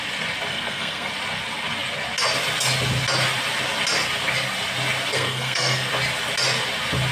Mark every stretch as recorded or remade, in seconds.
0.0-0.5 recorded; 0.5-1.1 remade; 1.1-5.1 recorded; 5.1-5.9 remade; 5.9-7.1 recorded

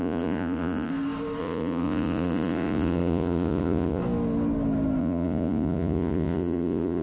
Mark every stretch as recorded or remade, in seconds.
0.0-0.9 remade; 0.9-1.4 recorded; 1.4-4.0 remade; 4.0-5.0 recorded; 5.0-7.0 remade